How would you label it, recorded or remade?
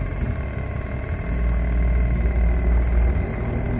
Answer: recorded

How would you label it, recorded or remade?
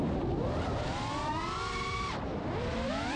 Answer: remade